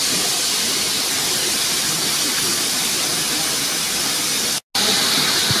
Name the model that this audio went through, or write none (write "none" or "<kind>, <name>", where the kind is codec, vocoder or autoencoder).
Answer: none